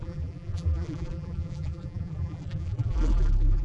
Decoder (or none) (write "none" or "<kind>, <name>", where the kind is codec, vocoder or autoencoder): vocoder, BigVGAN v2